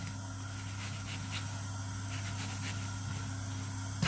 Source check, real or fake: real